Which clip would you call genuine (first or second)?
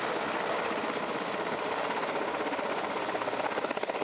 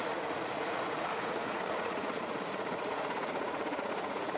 first